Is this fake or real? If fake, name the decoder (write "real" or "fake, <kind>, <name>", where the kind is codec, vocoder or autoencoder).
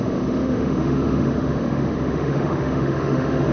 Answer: fake, autoencoder, DAC-VAE